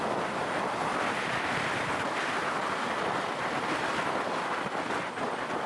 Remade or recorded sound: recorded